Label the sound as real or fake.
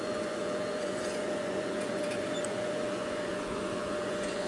fake